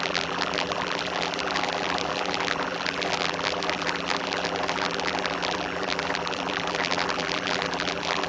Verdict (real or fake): fake